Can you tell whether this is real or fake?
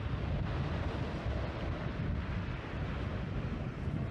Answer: real